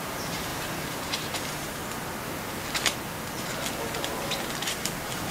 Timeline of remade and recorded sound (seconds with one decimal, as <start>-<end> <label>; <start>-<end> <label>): 0.0-1.8 remade; 1.8-4.7 recorded; 4.7-5.3 remade